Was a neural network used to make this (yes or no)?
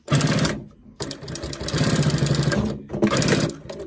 no